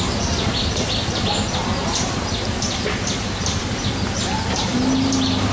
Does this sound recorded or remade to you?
recorded